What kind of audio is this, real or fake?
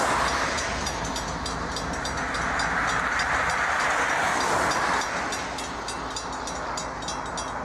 real